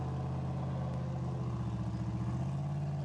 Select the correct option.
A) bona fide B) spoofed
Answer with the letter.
A